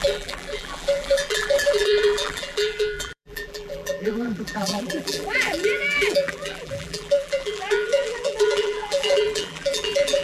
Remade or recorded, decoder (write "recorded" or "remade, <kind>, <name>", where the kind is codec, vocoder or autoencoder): remade, vocoder, BigVGAN v2